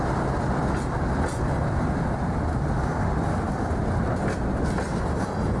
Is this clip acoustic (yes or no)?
yes